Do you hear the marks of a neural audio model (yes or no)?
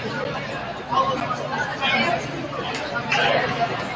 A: no